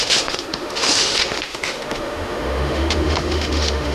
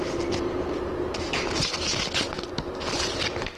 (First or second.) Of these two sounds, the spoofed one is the first